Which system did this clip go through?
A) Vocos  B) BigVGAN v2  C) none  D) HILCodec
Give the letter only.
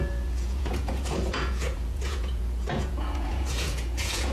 A